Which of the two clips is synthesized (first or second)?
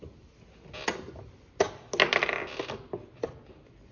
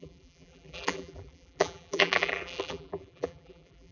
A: second